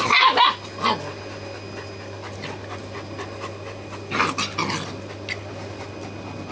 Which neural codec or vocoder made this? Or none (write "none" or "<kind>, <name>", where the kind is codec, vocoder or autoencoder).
none